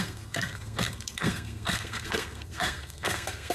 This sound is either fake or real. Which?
fake